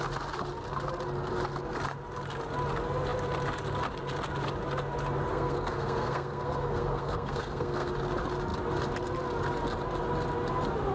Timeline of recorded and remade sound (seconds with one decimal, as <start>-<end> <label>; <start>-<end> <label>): 0.0-5.3 recorded; 5.3-7.9 remade; 7.9-10.9 recorded